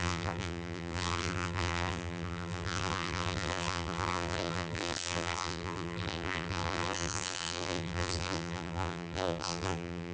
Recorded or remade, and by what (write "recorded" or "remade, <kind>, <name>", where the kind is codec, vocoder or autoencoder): remade, vocoder, BigVGAN v2